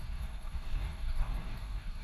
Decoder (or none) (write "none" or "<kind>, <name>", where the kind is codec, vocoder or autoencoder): codec, DAC